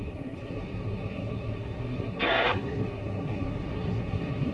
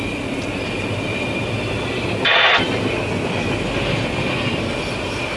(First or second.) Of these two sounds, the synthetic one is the first